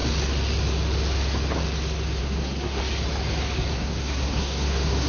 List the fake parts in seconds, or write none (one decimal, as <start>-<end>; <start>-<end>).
2.2-2.8; 3.7-5.1